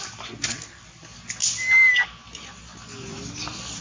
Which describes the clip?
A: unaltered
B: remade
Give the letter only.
A